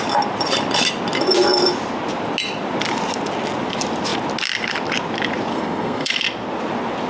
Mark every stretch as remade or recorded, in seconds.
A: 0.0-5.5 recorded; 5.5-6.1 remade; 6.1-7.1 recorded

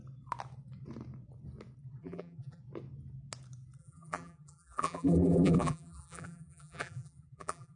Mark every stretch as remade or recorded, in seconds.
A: 0.0-2.0 recorded; 2.0-2.6 remade; 2.6-3.8 recorded; 3.8-7.8 remade

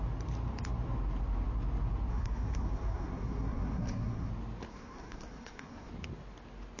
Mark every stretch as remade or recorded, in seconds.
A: 0.0-2.1 recorded; 2.1-4.3 remade; 4.3-4.7 recorded; 4.7-5.9 remade; 5.9-6.8 recorded

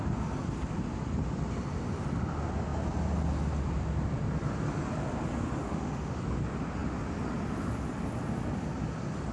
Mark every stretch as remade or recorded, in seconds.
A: 0.0-5.6 recorded; 5.6-6.2 remade; 6.2-9.3 recorded

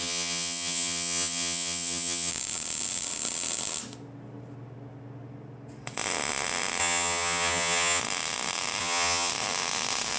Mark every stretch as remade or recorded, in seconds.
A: 0.0-2.3 remade; 2.3-6.8 recorded; 6.8-8.0 remade; 8.0-8.8 recorded; 8.8-9.3 remade; 9.3-10.2 recorded

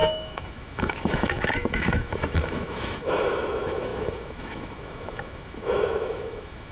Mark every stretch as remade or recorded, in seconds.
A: 0.0-6.7 remade

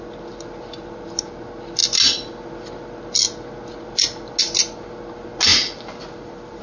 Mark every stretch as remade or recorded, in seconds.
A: 0.0-6.6 recorded